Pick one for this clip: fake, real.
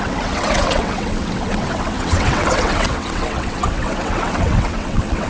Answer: fake